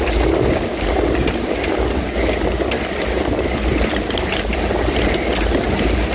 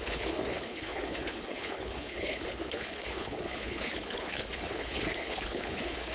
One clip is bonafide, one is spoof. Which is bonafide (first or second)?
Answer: first